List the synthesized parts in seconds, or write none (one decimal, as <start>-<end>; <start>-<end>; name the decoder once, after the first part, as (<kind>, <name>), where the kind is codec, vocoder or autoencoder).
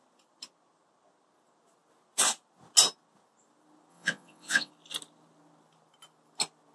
3.9-4.7 (vocoder, WaveNeXt)